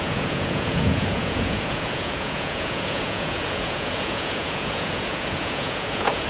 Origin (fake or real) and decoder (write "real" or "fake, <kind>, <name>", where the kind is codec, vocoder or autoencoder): fake, vocoder, Vocos